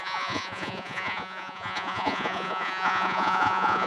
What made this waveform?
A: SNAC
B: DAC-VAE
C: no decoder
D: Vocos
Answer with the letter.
D